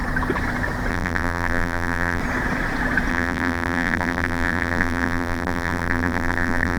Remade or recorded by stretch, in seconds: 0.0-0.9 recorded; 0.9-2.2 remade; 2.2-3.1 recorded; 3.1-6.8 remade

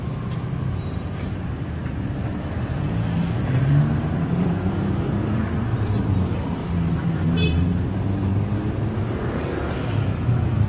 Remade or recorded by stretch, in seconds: 0.0-8.3 remade; 8.3-9.0 recorded; 9.0-10.7 remade

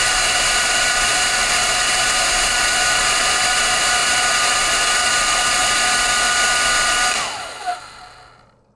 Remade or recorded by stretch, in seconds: 0.0-5.6 remade; 5.6-8.8 recorded

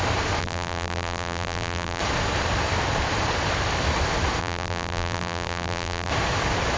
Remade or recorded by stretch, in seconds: 0.0-0.4 recorded; 0.4-2.0 remade; 2.0-4.4 recorded; 4.4-6.1 remade; 6.1-6.8 recorded

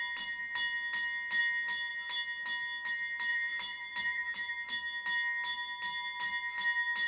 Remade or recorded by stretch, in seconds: 0.0-3.3 recorded; 3.3-4.5 remade; 4.5-7.1 recorded

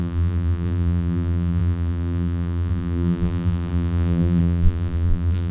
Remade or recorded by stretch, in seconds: 0.0-5.5 remade